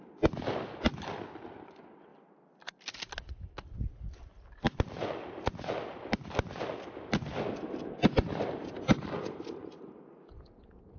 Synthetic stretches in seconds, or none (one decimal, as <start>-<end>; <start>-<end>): none